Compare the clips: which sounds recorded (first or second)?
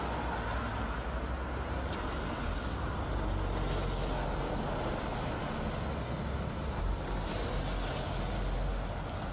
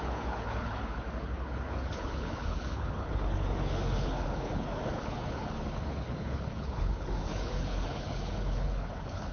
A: first